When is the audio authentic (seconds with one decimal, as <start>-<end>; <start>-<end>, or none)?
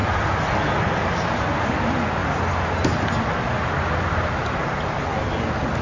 0.0-5.8